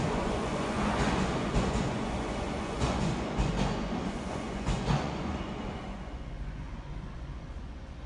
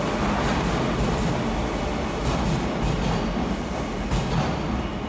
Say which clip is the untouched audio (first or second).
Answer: second